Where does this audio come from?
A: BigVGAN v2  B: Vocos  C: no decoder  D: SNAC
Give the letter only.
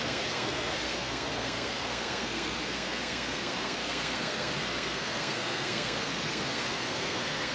D